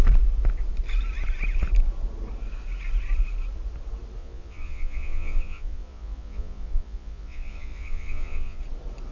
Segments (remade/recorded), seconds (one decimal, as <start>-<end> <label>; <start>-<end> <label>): 0.0-4.2 recorded; 4.2-8.6 remade; 8.6-9.1 recorded